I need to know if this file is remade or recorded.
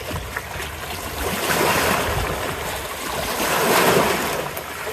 recorded